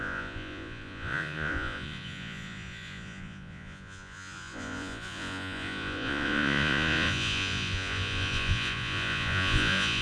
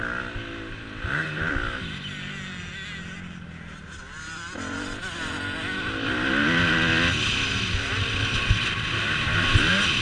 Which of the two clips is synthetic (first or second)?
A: first